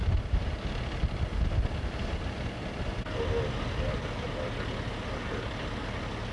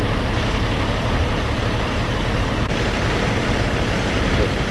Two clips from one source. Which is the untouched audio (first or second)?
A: first